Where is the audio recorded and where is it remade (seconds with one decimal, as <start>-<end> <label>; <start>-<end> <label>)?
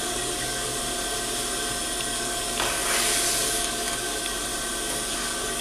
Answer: 0.0-0.7 remade; 0.7-2.1 recorded; 2.1-2.8 remade; 2.8-3.4 recorded; 3.4-4.5 remade; 4.5-5.1 recorded; 5.1-5.6 remade